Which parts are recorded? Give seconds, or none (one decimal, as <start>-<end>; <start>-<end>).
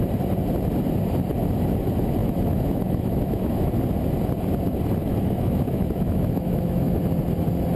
0.0-2.2; 3.7-5.0; 7.0-7.8